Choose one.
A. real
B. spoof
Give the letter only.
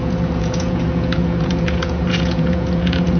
B